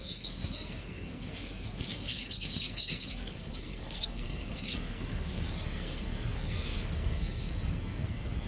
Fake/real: fake